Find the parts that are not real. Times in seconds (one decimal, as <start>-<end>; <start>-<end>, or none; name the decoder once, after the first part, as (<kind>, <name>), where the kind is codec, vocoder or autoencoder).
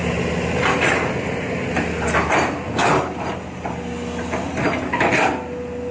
none